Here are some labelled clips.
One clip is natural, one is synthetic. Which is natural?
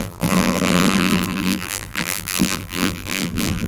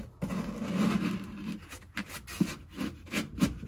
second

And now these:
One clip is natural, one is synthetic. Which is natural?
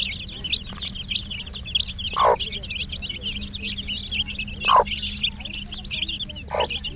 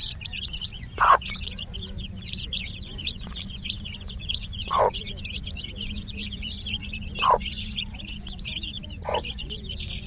first